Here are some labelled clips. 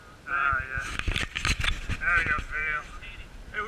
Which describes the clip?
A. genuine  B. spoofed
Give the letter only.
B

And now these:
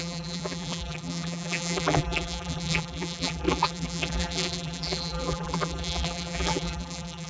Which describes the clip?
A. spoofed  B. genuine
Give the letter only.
A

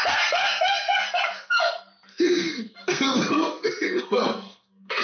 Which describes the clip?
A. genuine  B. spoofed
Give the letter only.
B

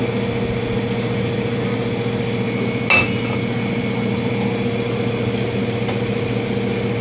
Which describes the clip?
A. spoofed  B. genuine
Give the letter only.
B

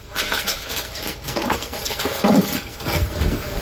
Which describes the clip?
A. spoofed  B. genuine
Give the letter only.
A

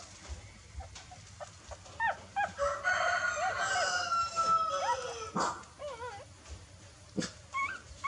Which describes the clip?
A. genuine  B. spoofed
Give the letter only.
A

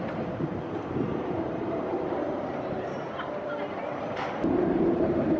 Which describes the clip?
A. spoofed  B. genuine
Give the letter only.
A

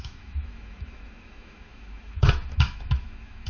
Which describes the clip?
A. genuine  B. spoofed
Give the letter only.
B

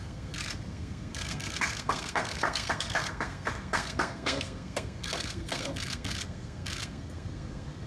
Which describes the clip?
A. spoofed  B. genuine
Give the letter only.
A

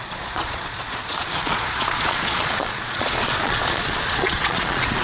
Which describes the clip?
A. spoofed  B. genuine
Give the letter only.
A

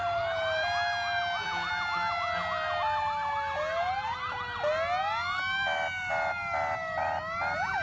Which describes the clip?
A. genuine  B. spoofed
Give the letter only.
A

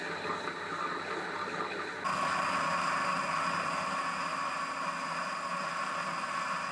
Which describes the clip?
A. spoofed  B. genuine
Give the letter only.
B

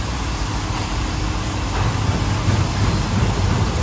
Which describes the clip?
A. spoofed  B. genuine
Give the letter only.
B